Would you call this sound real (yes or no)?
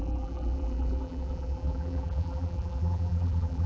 no